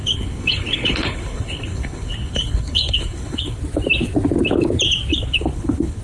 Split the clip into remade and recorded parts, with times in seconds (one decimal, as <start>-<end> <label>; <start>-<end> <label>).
0.0-3.6 remade; 3.6-5.1 recorded; 5.1-6.0 remade

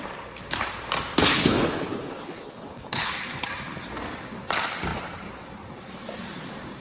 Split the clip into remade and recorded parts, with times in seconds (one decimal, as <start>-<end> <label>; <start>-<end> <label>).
0.0-1.3 recorded; 1.3-3.1 remade; 3.1-6.8 recorded

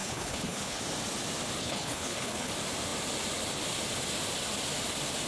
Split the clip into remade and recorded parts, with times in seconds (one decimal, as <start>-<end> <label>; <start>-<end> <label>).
0.0-0.8 remade; 0.8-1.6 recorded; 1.6-2.5 remade; 2.5-5.3 recorded

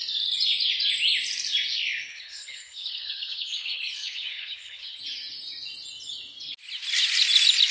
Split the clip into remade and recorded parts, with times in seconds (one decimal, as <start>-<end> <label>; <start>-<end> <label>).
0.0-2.1 recorded; 2.1-5.0 remade; 5.0-7.7 recorded

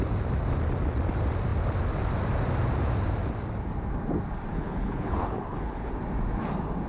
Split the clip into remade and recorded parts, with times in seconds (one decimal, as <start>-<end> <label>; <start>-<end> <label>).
0.0-4.5 recorded; 4.5-5.9 remade; 5.9-6.9 recorded

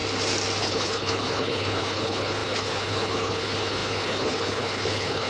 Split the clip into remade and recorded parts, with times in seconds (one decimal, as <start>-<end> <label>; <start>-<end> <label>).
0.0-0.6 recorded; 0.6-5.3 remade

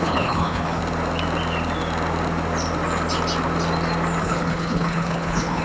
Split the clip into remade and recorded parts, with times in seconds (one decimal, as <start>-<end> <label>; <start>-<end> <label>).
0.0-0.8 remade; 0.8-4.2 recorded; 4.2-5.6 remade